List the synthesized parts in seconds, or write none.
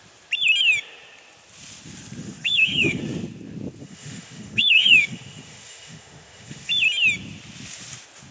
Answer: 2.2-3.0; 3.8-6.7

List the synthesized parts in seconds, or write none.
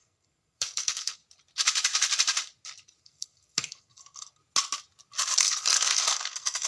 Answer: 0.0-1.2; 3.0-4.4; 5.4-6.7